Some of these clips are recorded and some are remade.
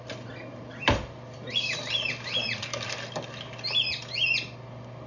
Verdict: recorded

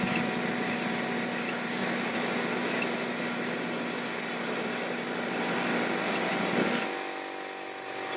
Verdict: recorded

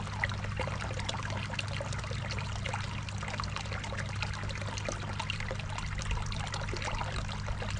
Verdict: recorded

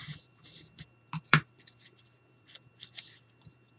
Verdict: remade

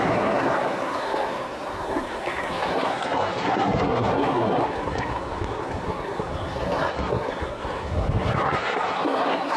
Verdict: remade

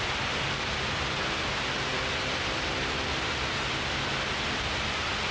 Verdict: recorded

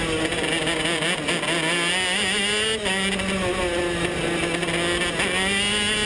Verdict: recorded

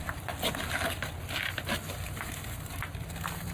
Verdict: recorded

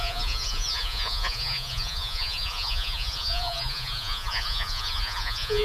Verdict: remade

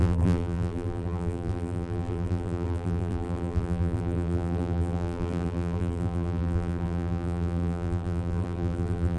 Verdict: remade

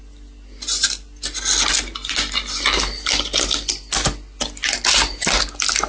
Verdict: recorded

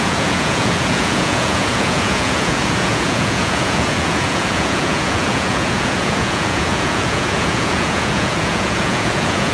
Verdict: remade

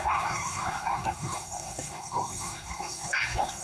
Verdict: remade